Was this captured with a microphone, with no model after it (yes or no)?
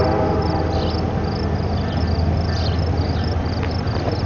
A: yes